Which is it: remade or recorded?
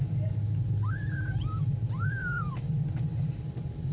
recorded